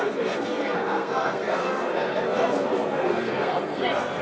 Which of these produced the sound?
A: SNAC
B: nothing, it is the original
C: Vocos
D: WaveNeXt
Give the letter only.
A